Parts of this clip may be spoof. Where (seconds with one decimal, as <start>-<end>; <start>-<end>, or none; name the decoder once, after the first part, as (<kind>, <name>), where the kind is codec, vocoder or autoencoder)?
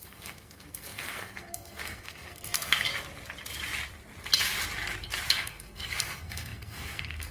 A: 0.0-2.9 (codec, SNAC); 5.3-7.3